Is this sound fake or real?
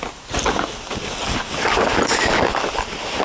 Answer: real